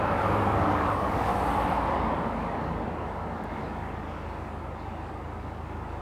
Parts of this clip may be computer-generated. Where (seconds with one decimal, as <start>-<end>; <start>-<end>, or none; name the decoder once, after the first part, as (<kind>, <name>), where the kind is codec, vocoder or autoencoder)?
0.0-1.3 (codec, DAC); 1.9-6.0